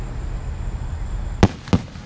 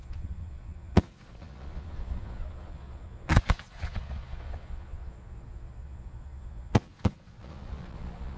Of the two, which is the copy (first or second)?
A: second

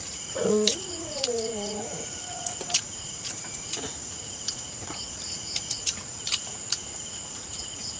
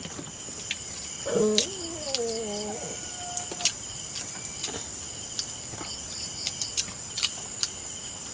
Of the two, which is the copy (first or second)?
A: first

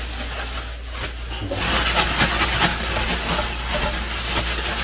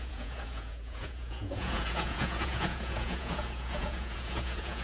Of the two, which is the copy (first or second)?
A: second